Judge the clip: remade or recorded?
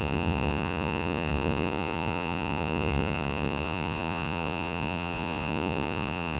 remade